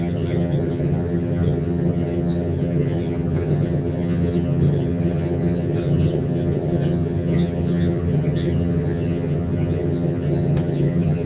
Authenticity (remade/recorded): remade